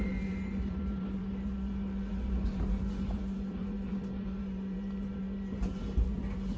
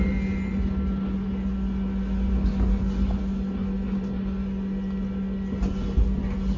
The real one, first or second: second